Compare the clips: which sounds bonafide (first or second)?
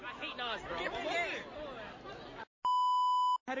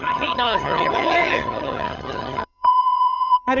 first